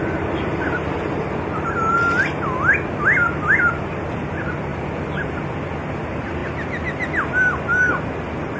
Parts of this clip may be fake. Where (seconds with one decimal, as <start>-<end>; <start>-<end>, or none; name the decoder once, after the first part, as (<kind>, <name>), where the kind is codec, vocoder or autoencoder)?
none